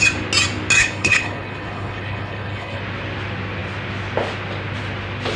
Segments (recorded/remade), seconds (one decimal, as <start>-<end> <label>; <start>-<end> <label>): 0.0-0.8 recorded; 0.8-2.8 remade; 2.8-5.4 recorded